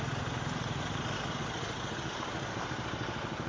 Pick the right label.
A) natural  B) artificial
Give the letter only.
A